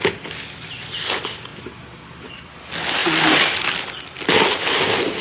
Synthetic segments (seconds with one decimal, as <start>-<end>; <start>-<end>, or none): none